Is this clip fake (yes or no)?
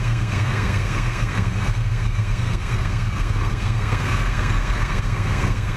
yes